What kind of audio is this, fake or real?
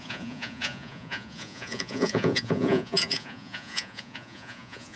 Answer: fake